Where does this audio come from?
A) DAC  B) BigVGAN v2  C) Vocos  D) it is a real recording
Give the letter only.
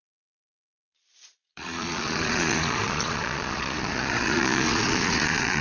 C